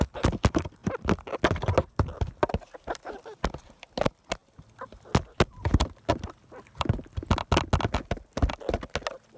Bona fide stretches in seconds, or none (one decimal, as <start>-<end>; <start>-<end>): 0.0-9.4